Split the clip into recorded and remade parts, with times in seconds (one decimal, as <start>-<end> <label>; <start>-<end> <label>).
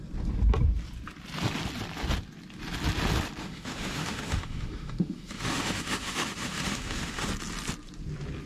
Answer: 0.0-3.4 recorded; 3.4-7.3 remade; 7.3-8.5 recorded